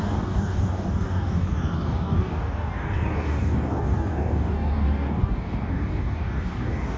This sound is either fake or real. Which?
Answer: fake